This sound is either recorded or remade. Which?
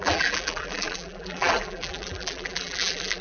remade